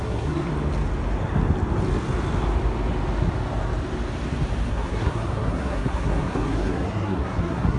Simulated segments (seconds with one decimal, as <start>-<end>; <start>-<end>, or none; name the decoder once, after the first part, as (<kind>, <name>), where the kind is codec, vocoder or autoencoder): 0.0-0.5 (codec, SNAC); 4.7-7.8